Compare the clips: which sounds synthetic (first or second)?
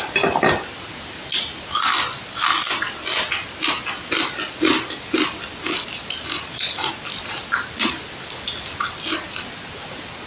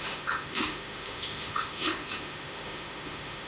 second